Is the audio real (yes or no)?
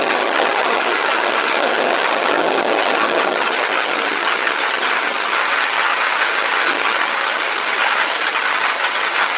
no